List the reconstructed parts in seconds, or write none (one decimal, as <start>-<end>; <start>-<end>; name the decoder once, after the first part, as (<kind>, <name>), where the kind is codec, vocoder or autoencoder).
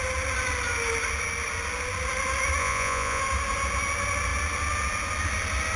2.6-3.2 (vocoder, Vocos)